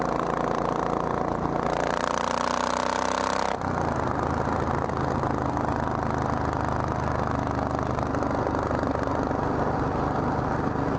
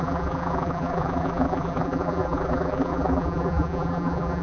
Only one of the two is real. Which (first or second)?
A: first